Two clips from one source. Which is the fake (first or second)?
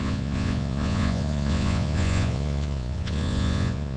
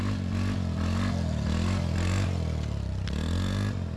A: first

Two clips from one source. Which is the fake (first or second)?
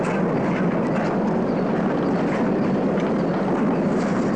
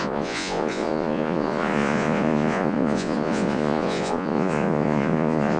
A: second